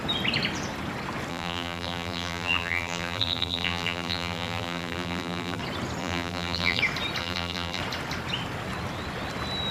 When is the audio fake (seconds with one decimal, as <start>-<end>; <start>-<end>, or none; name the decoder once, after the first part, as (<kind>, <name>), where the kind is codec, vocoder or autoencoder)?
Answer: 1.3-5.6 (vocoder, BigVGAN v2); 6.0-6.8; 7.2-7.8

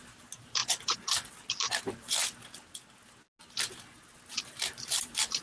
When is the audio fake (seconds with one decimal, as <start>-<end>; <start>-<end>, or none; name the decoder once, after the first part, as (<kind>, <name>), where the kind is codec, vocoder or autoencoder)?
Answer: 0.0-0.6 (vocoder, BigVGAN v2); 1.5-2.2; 4.4-5.4

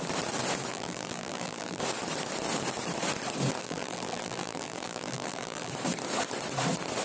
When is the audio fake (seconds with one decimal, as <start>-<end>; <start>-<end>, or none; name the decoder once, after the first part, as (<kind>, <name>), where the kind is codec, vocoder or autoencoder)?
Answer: 0.7-1.8 (vocoder, BigVGAN v2); 3.6-5.7